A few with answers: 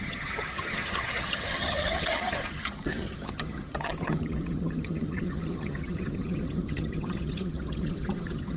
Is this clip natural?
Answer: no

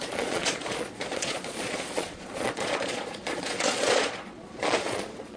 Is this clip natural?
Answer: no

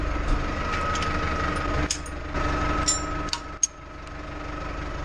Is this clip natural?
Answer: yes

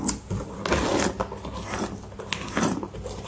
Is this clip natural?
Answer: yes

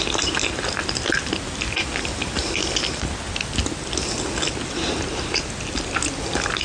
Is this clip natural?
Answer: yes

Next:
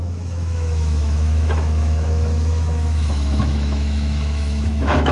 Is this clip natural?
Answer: no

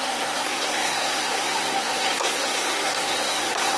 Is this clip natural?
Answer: no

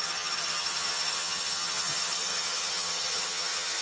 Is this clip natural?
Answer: no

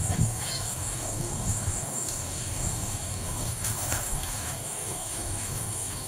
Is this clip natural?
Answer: no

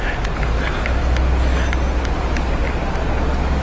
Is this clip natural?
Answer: yes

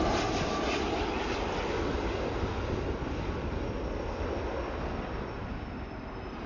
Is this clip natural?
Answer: yes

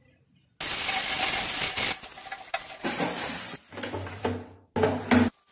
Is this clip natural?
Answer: yes